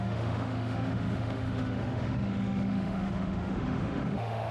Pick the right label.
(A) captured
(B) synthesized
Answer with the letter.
B